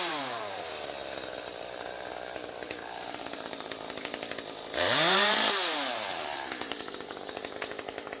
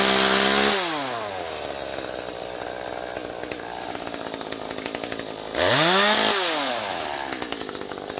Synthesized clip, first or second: first